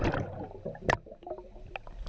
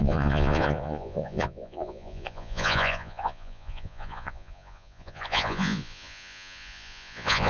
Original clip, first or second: first